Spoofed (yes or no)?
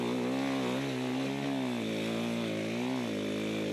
no